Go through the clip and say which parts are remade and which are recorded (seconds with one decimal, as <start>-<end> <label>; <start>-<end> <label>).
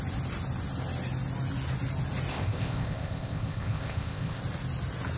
0.0-2.3 recorded; 2.3-4.4 remade; 4.4-5.2 recorded